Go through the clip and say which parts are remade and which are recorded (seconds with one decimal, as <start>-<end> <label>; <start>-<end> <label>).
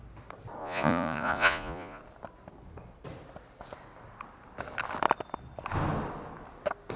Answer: 0.0-0.6 recorded; 0.6-2.0 remade; 2.0-7.0 recorded